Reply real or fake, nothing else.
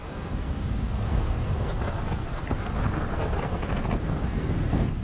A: fake